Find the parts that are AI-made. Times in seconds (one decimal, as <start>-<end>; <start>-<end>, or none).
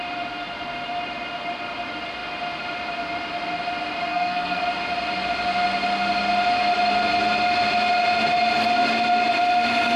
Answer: 4.1-4.6